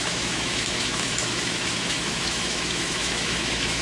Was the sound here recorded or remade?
remade